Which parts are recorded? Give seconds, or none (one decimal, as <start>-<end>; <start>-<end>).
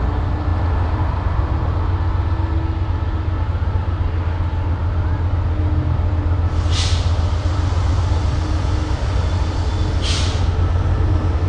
0.0-11.5